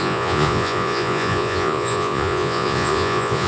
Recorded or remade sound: remade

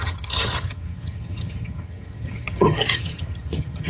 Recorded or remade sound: remade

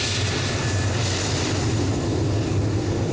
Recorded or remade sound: recorded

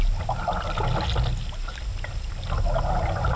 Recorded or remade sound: recorded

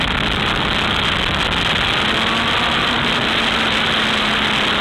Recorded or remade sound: recorded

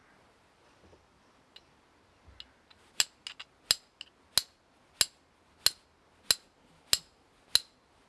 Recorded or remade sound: recorded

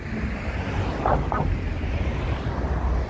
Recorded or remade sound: recorded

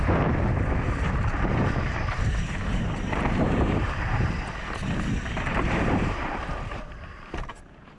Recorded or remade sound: remade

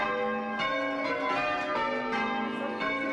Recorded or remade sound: recorded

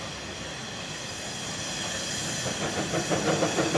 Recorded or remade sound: recorded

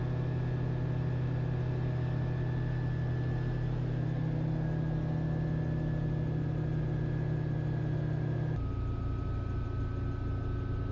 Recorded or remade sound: recorded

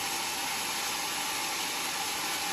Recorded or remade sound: recorded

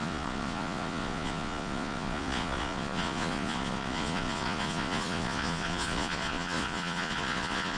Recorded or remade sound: remade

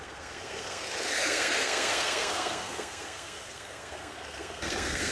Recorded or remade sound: remade